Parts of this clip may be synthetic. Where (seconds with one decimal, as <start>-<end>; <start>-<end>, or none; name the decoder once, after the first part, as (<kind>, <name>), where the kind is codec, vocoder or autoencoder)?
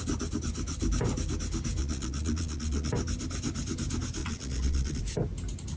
1.8-2.9 (vocoder, Vocos); 4.2-5.0